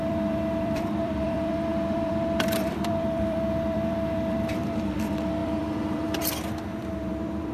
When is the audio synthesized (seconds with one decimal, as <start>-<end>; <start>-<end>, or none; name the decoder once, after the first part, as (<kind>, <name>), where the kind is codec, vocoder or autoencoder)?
0.0-7.5 (vocoder, BigVGAN v2)